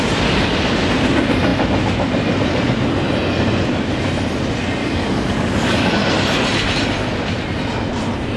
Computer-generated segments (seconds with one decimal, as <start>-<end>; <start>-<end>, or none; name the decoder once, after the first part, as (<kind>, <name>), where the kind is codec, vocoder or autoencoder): 4.8-5.9 (codec, DAC)